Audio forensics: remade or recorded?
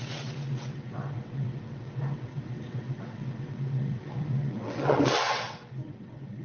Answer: remade